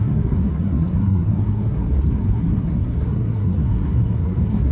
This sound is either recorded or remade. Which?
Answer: remade